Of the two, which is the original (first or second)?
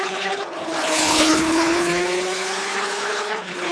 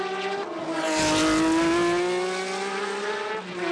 second